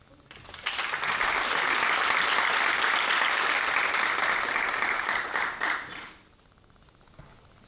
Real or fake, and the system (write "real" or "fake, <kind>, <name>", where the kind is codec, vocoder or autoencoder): real